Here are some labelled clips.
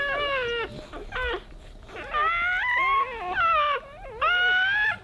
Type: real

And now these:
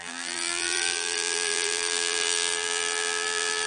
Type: fake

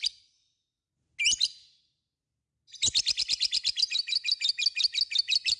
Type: real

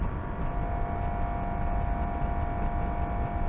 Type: real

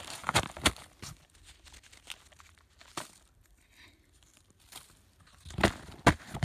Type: real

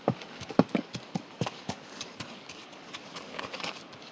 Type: fake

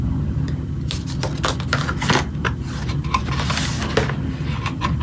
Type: real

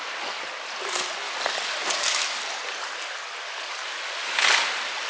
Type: real